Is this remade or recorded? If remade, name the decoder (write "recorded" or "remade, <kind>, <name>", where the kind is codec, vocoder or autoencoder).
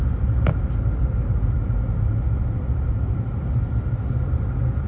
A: recorded